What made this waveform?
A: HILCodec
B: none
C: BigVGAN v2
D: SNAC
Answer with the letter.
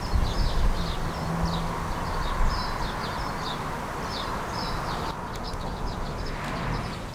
B